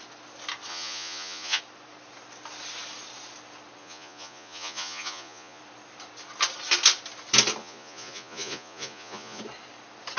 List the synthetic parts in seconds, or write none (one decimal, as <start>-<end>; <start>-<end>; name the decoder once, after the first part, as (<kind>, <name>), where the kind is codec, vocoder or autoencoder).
0.7-1.6 (vocoder, Vocos); 3.8-5.6; 7.6-9.4